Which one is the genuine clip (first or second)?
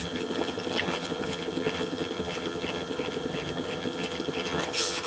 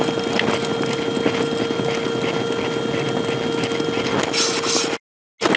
second